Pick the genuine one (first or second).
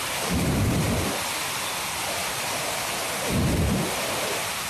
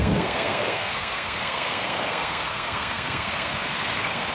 first